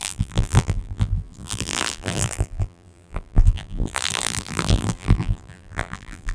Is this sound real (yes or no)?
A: no